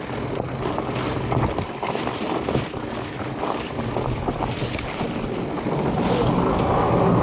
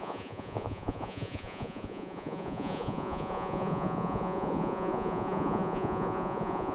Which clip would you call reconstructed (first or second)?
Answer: second